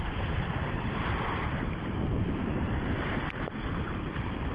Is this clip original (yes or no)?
no